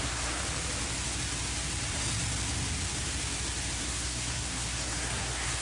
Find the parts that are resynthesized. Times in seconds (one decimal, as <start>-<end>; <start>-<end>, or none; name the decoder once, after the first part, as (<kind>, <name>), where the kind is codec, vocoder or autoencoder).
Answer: 0.0-0.4 (codec, SNAC); 3.8-5.6